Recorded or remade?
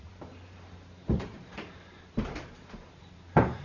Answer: remade